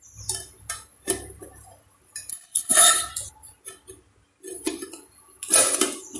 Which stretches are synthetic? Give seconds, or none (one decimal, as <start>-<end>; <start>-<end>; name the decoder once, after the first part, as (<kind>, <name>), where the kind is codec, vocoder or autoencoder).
2.3-3.1 (codec, HILCodec)